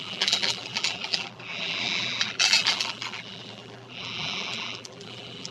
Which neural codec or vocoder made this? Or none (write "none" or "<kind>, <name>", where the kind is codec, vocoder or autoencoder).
vocoder, BigVGAN v2